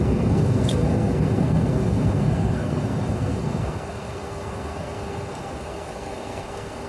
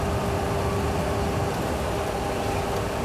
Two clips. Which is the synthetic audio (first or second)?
first